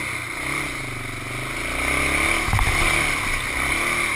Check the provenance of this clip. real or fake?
real